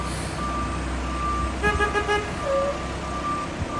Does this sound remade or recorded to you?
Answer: recorded